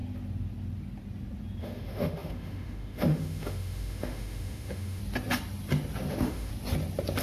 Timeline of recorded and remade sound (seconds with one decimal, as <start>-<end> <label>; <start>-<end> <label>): 0.0-1.6 recorded; 1.6-5.0 remade; 5.0-6.1 recorded; 6.1-6.5 remade; 6.5-7.2 recorded